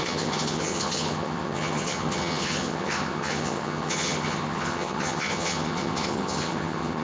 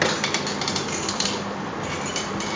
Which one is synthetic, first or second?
first